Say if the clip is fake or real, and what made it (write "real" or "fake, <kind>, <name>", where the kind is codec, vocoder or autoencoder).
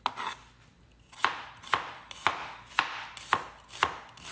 real